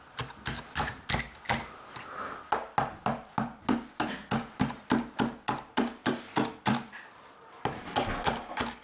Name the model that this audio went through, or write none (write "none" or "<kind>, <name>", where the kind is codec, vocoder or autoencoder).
none